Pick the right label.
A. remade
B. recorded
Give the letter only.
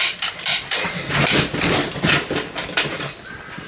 B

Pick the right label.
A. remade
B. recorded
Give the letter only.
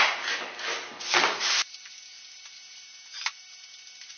B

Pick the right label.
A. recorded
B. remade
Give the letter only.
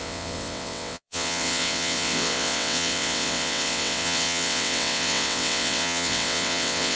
B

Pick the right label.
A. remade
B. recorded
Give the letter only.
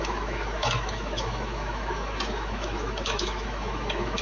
A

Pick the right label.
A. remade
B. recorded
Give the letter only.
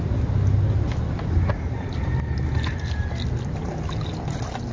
B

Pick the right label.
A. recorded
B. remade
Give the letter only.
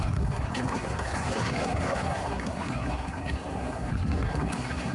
B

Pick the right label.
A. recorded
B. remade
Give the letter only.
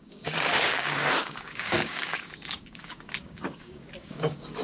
B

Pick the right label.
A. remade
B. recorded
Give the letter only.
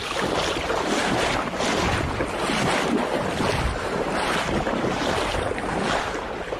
B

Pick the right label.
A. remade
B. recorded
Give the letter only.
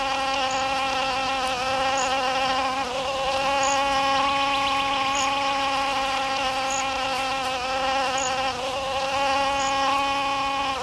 B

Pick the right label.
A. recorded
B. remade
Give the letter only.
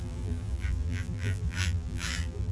B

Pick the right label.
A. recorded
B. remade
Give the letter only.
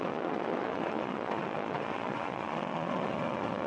B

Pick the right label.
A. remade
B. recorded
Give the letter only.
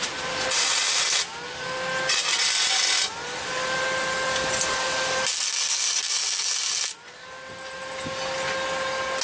B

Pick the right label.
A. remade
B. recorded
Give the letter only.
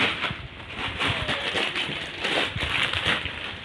B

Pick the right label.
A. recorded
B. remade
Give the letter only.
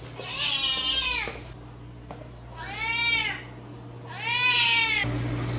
A